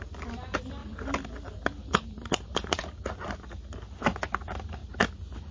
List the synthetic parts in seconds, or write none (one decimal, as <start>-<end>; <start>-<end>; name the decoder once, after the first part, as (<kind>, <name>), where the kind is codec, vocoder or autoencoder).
none